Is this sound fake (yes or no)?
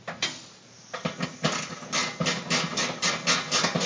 no